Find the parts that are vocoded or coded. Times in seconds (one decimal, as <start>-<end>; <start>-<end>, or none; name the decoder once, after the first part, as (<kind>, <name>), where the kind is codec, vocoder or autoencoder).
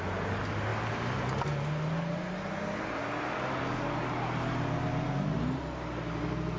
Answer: none